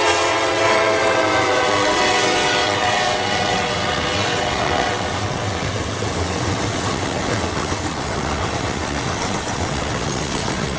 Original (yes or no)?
no